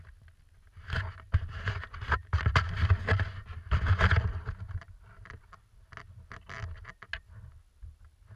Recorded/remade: recorded